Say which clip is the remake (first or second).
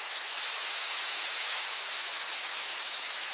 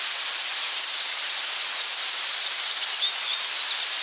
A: first